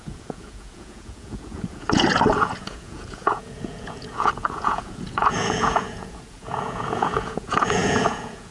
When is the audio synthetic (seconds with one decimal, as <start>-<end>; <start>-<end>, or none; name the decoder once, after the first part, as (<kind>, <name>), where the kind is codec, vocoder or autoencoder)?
0.0-8.5 (vocoder, Vocos)